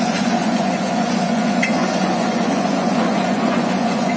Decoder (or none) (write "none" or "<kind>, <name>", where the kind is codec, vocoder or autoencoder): vocoder, Vocos